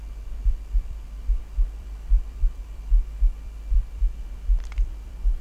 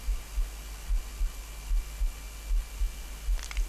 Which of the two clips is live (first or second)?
second